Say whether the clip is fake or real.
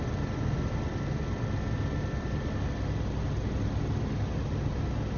real